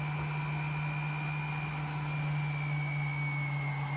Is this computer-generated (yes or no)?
no